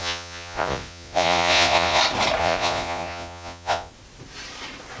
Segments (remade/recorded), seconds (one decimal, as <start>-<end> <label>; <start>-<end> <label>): 0.0-2.0 remade; 2.0-2.4 recorded; 2.4-3.9 remade; 3.9-5.0 recorded